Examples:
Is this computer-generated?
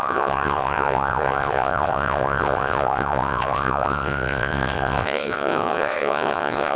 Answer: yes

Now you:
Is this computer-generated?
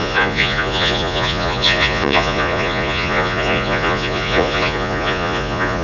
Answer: yes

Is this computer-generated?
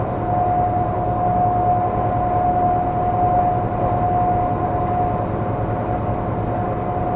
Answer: no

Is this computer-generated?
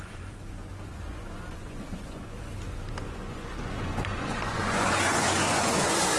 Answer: yes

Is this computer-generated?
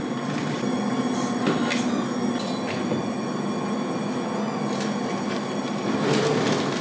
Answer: no